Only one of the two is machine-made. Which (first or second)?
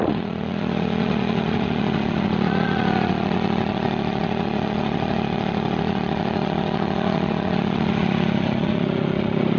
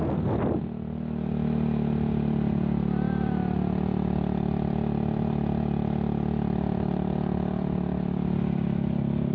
first